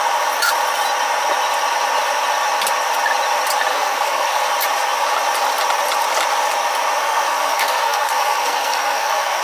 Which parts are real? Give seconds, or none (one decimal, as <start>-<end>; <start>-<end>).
0.0-3.7; 4.5-7.0